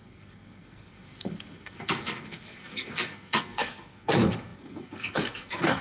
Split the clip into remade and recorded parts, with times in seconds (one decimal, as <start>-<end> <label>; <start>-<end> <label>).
0.0-5.8 remade